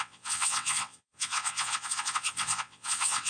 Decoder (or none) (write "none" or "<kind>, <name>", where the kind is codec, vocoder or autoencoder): vocoder, WaveNeXt